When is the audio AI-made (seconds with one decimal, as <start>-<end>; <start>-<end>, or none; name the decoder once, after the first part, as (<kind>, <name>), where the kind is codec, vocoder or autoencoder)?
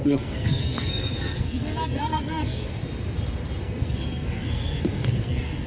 0.0-2.8 (codec, SNAC); 3.6-5.7